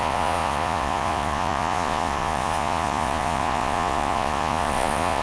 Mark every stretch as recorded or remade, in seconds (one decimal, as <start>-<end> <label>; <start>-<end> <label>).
0.0-5.2 remade